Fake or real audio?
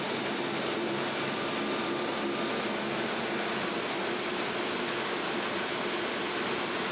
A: real